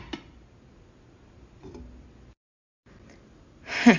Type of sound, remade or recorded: recorded